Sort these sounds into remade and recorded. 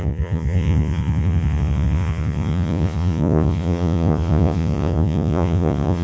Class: remade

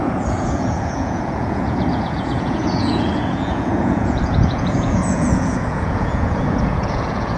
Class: remade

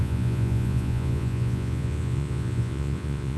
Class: remade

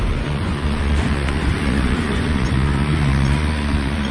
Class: remade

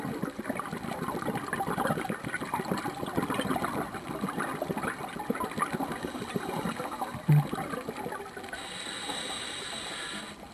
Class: recorded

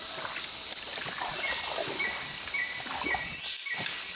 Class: recorded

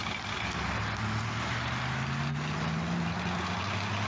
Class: recorded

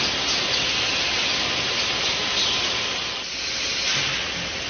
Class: recorded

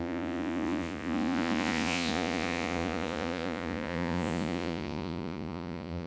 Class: remade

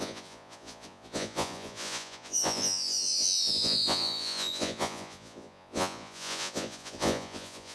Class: remade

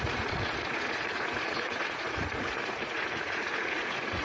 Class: remade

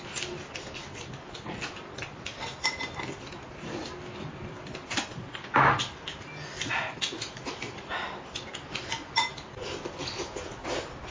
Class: recorded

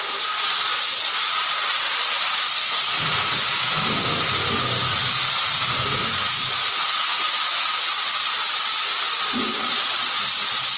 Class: recorded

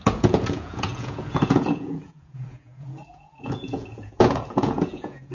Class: remade